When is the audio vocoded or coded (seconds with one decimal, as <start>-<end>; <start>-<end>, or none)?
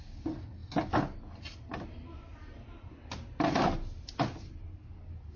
none